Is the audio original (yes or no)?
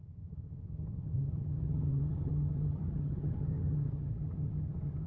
no